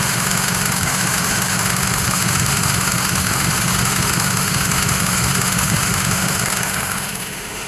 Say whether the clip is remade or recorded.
remade